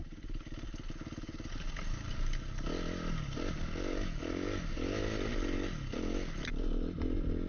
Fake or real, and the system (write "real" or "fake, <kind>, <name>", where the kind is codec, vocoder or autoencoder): real